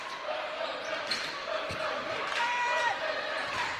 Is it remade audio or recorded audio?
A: remade